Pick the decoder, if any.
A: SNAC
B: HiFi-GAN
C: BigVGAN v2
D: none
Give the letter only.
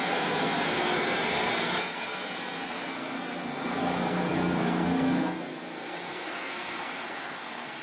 A